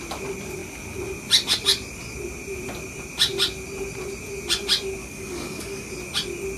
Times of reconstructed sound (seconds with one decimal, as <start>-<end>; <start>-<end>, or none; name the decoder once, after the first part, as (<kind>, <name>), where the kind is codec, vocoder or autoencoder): 5.0-5.9 (codec, DAC)